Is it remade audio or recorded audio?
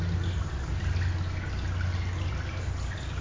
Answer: recorded